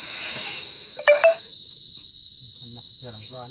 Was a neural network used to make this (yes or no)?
yes